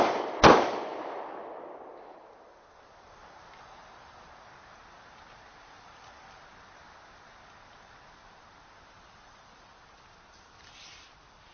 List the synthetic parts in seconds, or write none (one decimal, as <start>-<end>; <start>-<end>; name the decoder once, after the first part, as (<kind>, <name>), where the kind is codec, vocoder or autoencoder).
none